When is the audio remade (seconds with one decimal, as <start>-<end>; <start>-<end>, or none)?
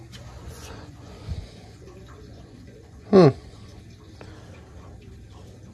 0.4-3.8